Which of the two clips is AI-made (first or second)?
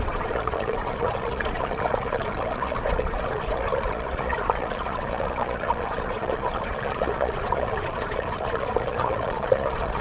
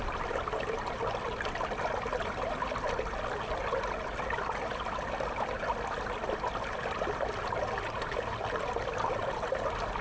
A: first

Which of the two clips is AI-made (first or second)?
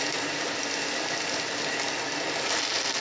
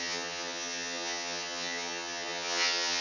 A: second